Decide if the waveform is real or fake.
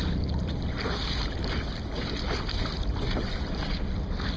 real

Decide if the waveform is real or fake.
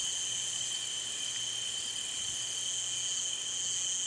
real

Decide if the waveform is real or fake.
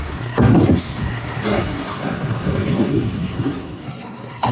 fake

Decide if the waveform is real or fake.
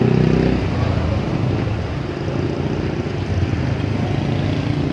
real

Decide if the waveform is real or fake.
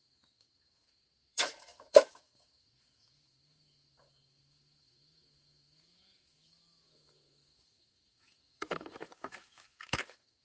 fake